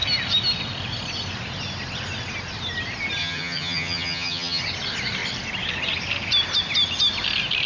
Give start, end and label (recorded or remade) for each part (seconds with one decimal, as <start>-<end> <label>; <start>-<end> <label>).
0.0-3.2 recorded; 3.2-4.6 remade; 4.6-7.7 recorded